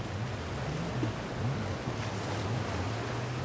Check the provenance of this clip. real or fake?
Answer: real